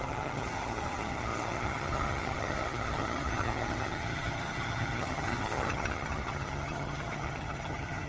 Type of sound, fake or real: fake